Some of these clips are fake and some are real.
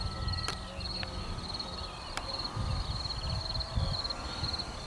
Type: real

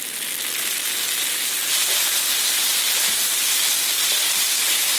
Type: real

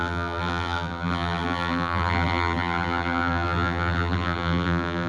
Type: fake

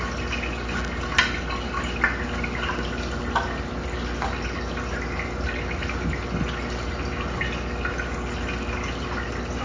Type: real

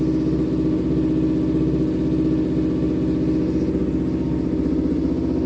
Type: real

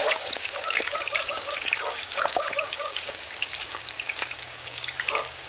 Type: fake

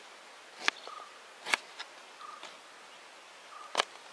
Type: real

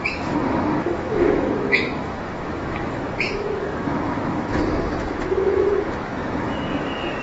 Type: fake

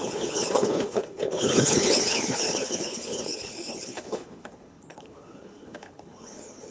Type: fake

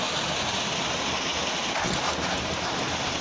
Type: real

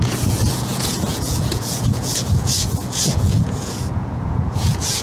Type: fake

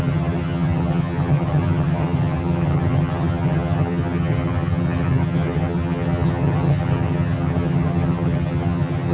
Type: fake